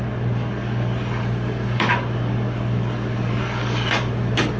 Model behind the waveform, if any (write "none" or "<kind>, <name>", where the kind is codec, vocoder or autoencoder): codec, DAC